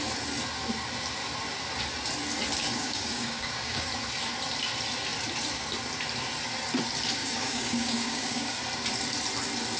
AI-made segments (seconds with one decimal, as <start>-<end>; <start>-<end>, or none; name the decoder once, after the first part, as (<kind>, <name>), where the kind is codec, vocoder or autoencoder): 2.6-3.9 (codec, DAC); 7.2-8.6